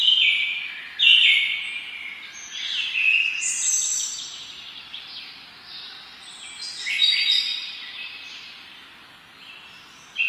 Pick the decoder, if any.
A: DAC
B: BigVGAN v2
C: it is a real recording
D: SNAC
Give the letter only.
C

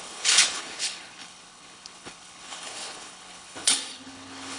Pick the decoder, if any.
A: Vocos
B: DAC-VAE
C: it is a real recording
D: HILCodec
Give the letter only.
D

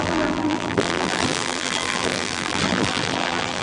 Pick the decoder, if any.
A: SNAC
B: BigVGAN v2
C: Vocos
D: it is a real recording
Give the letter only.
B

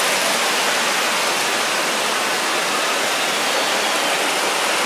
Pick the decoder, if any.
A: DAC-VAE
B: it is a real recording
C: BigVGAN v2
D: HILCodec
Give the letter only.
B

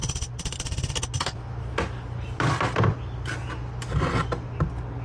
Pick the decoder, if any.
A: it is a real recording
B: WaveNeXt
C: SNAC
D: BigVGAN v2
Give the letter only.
A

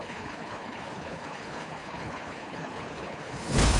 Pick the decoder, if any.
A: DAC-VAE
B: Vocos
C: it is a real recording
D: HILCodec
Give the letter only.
D